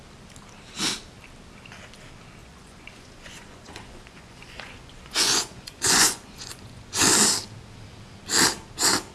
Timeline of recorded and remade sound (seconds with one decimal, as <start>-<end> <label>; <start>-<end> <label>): 0.0-2.4 recorded; 2.4-7.0 remade; 7.0-9.1 recorded